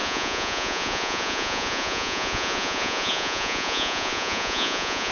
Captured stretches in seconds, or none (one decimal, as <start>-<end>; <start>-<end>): none